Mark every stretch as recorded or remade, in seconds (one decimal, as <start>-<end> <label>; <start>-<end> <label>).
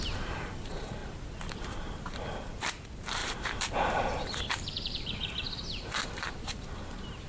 0.0-1.0 remade; 1.0-1.6 recorded; 1.6-7.3 remade